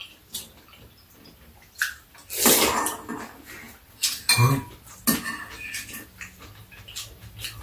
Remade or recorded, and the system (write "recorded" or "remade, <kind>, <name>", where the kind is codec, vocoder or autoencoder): recorded